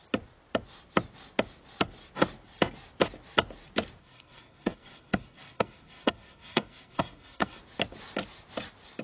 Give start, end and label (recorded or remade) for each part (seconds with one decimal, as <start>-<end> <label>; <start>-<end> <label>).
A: 0.0-4.0 recorded; 4.0-7.6 remade; 7.6-9.0 recorded